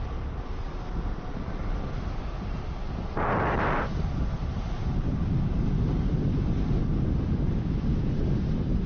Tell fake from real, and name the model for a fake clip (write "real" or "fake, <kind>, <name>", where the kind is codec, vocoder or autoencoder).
real